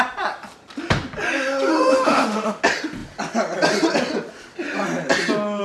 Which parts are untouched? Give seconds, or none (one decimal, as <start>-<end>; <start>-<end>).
0.0-1.7; 2.6-5.6